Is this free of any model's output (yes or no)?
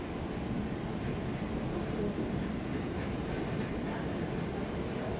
yes